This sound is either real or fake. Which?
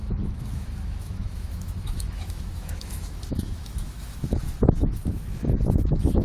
fake